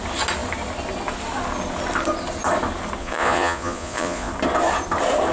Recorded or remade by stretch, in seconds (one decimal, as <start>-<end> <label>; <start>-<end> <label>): 0.0-3.0 recorded; 3.0-4.3 remade; 4.3-5.3 recorded